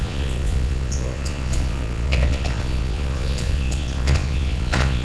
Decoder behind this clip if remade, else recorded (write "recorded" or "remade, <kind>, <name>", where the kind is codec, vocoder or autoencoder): remade, vocoder, Vocos